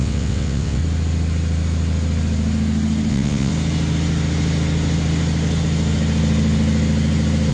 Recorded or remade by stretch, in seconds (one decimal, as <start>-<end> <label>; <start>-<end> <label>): 0.0-0.8 remade; 0.8-3.1 recorded; 3.1-3.5 remade; 3.5-7.5 recorded